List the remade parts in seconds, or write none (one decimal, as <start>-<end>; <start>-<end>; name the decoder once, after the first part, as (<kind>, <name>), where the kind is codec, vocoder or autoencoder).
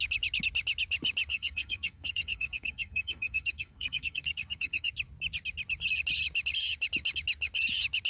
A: 1.3-4.9 (codec, SNAC)